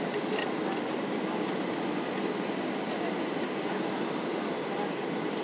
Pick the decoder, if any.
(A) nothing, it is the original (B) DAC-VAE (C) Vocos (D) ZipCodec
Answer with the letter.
A